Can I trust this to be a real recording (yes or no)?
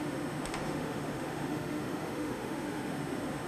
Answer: no